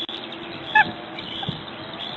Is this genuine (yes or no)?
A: no